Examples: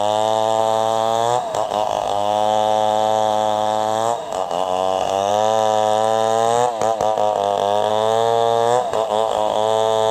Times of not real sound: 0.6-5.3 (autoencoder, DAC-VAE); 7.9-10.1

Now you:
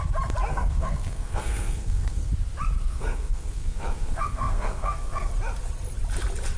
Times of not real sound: 0.5-2.3 (codec, SNAC); 2.8-5.3

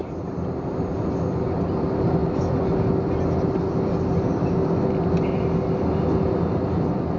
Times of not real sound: none

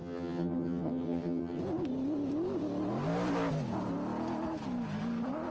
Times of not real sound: 0.0-1.6 (vocoder, HiFi-GAN)

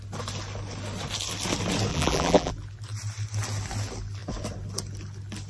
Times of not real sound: 1.9-2.5 (vocoder, BigVGAN v2)

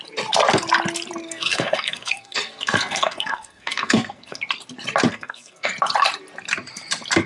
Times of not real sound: 1.2-4.4 (codec, SNAC); 5.1-5.7

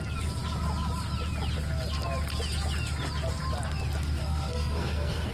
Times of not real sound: 4.2-5.3 (codec, SNAC)